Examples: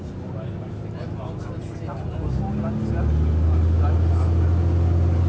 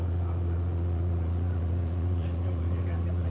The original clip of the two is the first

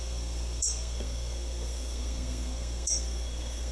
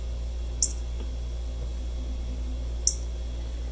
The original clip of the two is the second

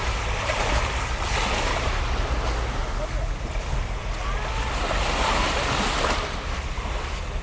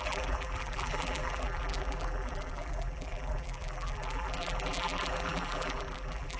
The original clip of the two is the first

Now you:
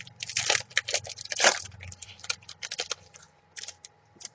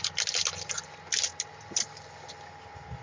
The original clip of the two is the second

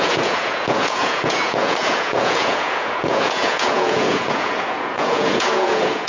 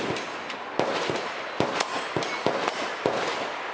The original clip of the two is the second